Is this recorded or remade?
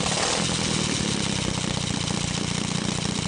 recorded